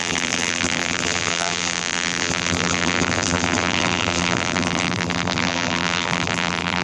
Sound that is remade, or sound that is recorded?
remade